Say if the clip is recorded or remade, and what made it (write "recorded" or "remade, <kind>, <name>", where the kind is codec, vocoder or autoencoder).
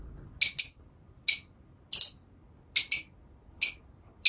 recorded